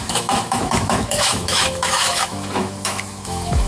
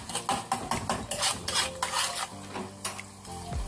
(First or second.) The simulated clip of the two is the first